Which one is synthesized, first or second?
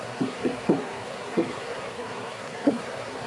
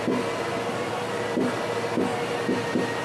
first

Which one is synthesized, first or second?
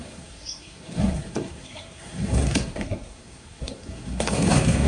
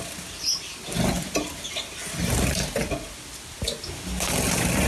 first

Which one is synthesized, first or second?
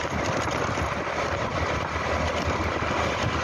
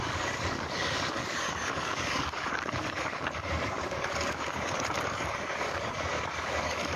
second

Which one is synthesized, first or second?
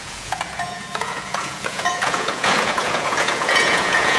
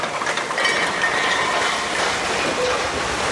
first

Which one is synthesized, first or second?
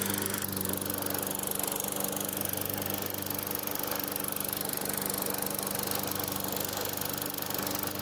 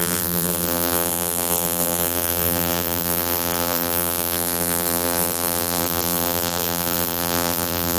second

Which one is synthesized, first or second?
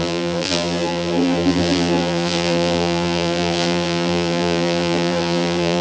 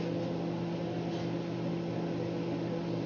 first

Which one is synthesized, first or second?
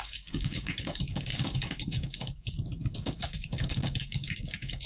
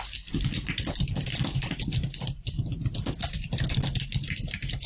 first